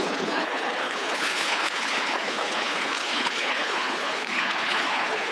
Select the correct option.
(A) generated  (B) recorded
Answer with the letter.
A